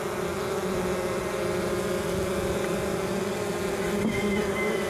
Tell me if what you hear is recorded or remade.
recorded